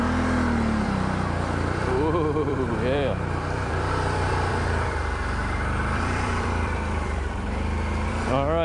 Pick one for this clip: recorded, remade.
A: remade